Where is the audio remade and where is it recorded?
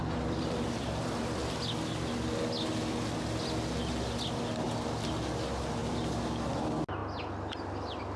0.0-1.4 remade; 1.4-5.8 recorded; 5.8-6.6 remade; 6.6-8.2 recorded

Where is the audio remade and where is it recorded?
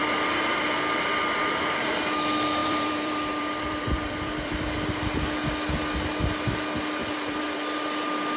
0.0-2.6 recorded; 2.6-4.5 remade; 4.5-7.0 recorded; 7.0-8.0 remade; 8.0-8.4 recorded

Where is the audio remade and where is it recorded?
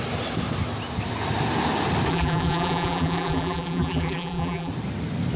0.0-2.1 recorded; 2.1-4.7 remade; 4.7-5.4 recorded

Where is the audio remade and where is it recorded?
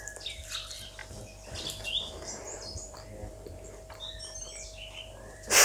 0.0-5.6 remade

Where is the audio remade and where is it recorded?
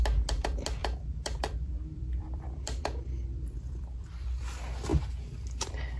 0.0-0.8 recorded; 0.8-4.4 remade; 4.4-6.0 recorded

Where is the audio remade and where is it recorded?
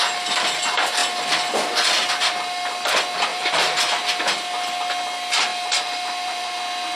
0.0-3.3 recorded; 3.3-4.0 remade; 4.0-5.5 recorded; 5.5-6.6 remade; 6.6-7.0 recorded